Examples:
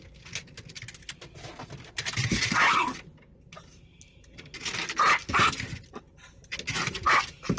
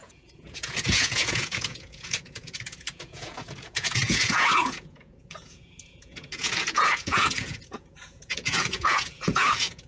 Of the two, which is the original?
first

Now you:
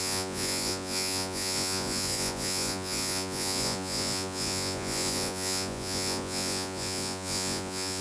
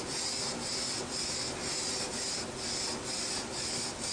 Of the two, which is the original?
second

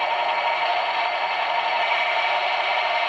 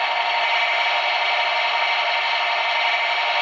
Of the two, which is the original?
second